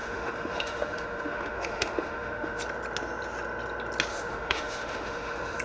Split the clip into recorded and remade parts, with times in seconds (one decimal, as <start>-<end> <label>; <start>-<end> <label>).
0.0-2.6 remade; 2.6-4.1 recorded; 4.1-5.6 remade